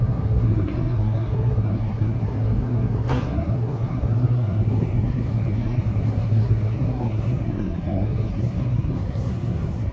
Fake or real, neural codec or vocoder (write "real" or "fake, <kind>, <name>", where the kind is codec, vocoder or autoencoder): fake, codec, SNAC